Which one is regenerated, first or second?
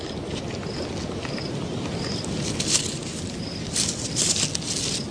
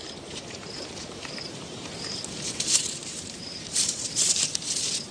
second